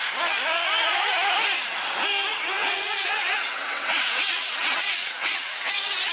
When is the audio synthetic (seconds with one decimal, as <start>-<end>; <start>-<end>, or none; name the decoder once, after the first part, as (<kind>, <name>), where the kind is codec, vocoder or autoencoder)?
2.3-6.1 (vocoder, WaveNeXt)